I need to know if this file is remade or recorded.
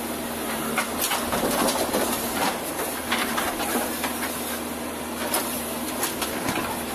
recorded